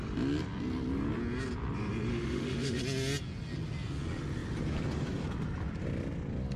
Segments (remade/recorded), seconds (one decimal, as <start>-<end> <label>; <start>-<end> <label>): 0.0-2.1 recorded; 2.1-2.8 remade; 2.8-6.6 recorded